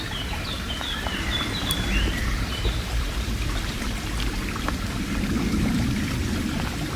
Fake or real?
fake